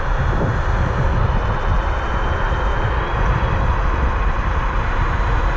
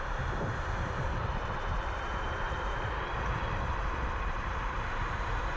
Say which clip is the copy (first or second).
second